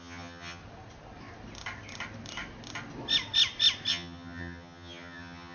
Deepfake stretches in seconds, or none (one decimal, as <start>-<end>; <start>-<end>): 0.0-0.6; 3.9-5.5